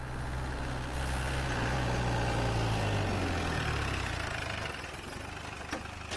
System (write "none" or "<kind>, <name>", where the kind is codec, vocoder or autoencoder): none